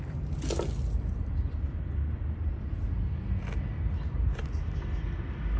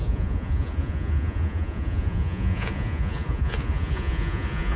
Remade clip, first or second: second